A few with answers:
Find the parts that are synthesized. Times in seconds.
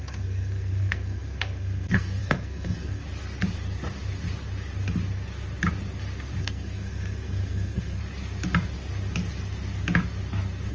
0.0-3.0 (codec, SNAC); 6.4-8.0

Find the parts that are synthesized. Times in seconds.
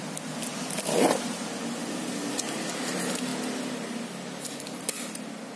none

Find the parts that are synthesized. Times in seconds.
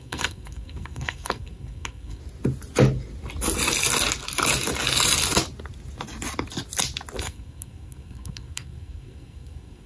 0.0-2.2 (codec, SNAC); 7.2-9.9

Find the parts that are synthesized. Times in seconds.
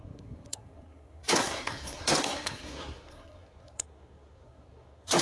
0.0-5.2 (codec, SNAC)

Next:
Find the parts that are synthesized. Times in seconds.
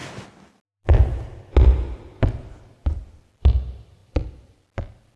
none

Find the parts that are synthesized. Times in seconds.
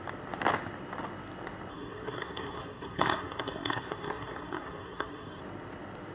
1.7-5.4 (codec, SNAC)